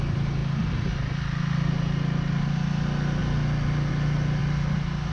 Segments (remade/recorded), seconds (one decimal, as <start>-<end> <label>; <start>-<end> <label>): 0.0-5.1 recorded